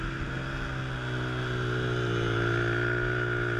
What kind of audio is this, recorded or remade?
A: recorded